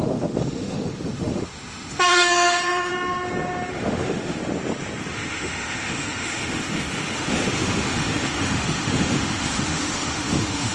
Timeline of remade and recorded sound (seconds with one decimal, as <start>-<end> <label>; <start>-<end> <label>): 0.0-2.9 remade; 2.9-3.7 recorded; 3.7-4.4 remade; 4.4-5.1 recorded; 5.1-10.7 remade